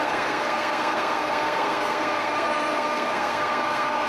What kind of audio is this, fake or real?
fake